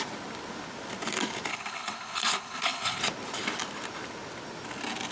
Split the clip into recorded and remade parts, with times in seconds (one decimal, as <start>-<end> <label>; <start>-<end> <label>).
0.0-1.5 recorded; 1.5-3.0 remade; 3.0-5.1 recorded

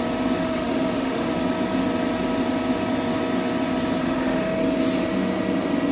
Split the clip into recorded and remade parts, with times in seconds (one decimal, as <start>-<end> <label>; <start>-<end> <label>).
0.0-0.4 recorded; 0.4-1.3 remade; 1.3-4.0 recorded; 4.0-4.6 remade; 4.6-5.9 recorded

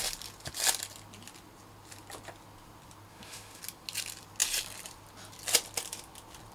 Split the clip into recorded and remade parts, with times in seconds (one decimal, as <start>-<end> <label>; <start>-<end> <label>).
0.0-3.1 recorded; 3.1-3.6 remade; 3.6-6.5 recorded

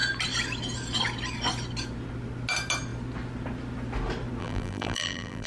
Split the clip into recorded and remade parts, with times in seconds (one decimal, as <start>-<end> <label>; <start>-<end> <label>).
0.0-4.4 recorded; 4.4-5.5 remade